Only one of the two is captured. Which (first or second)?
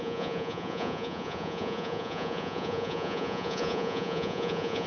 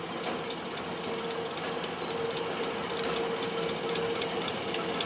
second